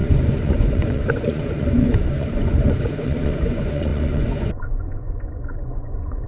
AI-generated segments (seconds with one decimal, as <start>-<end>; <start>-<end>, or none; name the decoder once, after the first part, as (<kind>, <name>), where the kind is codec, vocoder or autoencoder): 0.0-6.3 (vocoder, Vocos)